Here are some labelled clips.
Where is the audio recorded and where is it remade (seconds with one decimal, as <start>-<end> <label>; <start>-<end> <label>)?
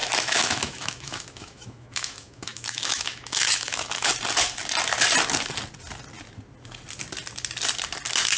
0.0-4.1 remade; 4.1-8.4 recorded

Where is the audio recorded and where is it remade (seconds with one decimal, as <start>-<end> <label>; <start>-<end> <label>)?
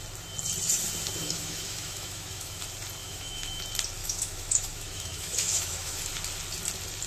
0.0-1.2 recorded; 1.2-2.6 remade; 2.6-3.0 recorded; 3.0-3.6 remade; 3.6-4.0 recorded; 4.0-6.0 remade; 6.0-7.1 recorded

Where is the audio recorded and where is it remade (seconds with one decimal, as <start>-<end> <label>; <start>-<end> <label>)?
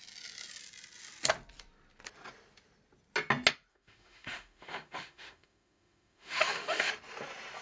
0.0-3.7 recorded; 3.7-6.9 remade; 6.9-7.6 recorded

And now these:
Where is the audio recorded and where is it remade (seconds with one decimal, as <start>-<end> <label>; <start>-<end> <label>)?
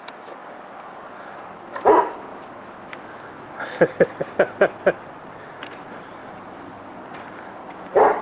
0.0-2.3 recorded; 2.3-3.5 remade; 3.5-8.2 recorded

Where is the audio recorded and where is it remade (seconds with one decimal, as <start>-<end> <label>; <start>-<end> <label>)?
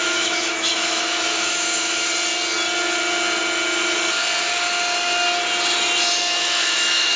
0.0-2.1 remade; 2.1-6.2 recorded; 6.2-7.2 remade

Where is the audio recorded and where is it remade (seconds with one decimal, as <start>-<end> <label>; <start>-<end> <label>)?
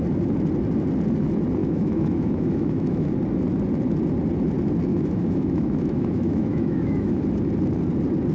0.0-1.6 recorded; 1.6-3.1 remade; 3.1-4.9 recorded; 4.9-7.2 remade; 7.2-8.3 recorded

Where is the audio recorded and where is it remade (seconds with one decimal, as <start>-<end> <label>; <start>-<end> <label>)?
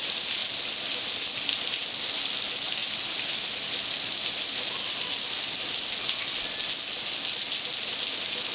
0.0-8.5 recorded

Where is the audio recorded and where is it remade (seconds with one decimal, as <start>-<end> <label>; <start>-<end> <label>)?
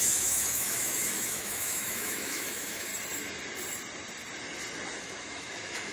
0.0-2.9 remade; 2.9-5.0 recorded; 5.0-5.9 remade